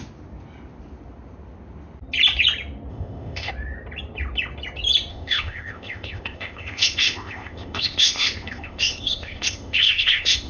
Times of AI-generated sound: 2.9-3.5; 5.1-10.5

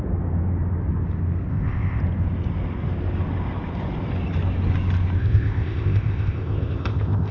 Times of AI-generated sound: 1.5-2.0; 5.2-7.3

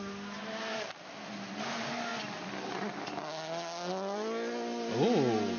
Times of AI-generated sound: none